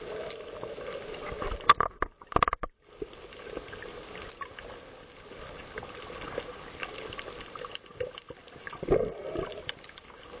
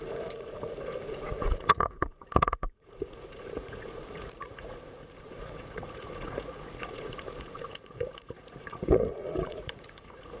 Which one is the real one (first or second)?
first